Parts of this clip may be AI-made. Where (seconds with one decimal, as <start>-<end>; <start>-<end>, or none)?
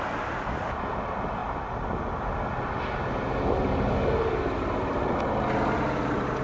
none